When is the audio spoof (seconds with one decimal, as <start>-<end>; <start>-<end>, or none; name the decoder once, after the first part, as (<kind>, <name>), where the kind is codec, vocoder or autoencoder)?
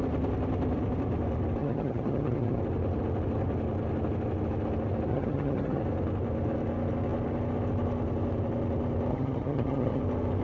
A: 1.6-2.6 (vocoder, HiFi-GAN); 5.1-5.8; 9.1-10.0